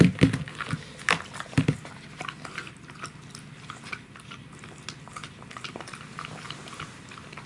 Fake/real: real